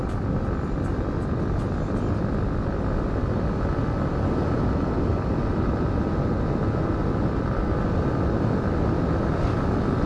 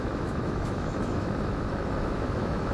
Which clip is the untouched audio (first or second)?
first